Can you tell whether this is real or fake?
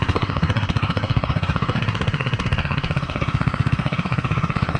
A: fake